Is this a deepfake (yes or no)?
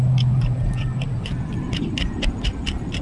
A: no